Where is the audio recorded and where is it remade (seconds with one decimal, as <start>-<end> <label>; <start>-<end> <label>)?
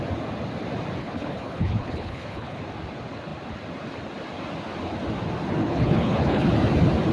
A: 0.0-1.0 recorded; 1.0-2.6 remade; 2.6-5.6 recorded; 5.6-6.5 remade; 6.5-7.1 recorded